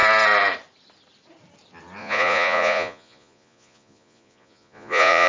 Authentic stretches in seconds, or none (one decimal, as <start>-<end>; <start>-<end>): 0.0-2.0

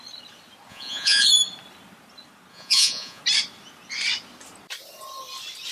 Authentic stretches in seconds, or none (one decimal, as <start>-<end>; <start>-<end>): 0.0-0.7; 1.3-2.5; 3.2-5.7